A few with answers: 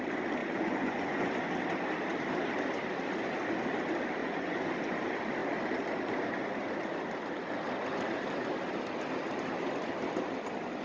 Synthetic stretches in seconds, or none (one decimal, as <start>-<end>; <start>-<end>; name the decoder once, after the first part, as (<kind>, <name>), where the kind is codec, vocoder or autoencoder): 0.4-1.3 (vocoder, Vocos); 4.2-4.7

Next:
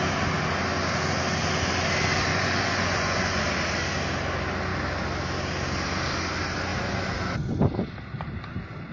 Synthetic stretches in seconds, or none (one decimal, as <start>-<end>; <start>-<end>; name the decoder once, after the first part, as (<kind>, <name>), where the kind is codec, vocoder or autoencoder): 2.3-3.4 (vocoder, Vocos)

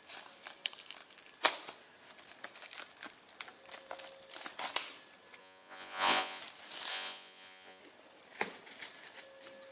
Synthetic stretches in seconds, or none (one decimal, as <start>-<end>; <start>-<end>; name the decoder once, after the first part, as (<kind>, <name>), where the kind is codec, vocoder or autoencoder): 5.4-6.4 (vocoder, Vocos); 6.9-7.8

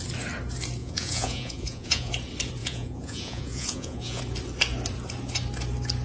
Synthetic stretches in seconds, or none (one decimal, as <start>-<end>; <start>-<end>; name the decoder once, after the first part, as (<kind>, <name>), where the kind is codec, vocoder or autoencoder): 0.8-2.1 (vocoder, Vocos); 2.6-4.2

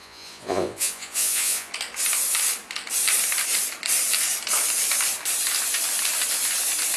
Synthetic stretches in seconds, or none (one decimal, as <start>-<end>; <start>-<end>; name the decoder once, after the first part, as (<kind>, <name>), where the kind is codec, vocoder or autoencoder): 0.0-1.7 (vocoder, Vocos)